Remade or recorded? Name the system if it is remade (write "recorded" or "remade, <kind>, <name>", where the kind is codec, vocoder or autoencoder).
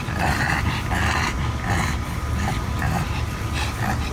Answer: recorded